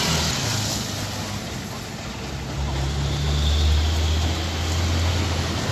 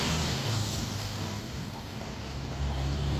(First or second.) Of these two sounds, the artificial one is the second